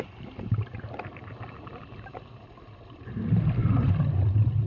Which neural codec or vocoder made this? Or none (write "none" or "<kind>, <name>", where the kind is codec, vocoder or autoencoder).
vocoder, BigVGAN v2